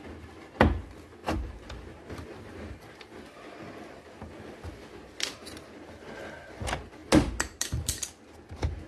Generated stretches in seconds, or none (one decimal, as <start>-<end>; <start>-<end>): 1.2-2.7; 7.0-8.1